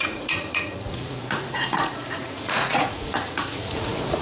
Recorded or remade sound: remade